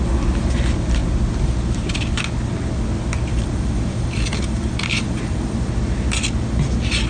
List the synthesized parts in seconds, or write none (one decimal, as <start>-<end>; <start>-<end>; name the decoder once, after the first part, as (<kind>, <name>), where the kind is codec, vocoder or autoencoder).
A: 3.3-5.7 (vocoder, BigVGAN v2)